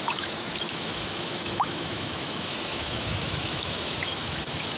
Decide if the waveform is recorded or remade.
remade